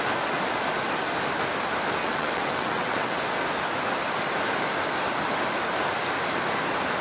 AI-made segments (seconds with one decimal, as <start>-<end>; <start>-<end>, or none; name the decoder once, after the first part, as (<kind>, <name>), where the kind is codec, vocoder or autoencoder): 2.0-3.2 (vocoder, WaveNeXt)